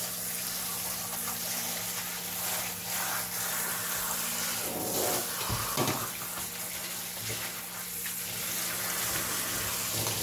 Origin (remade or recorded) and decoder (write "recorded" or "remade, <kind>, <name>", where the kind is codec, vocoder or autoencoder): recorded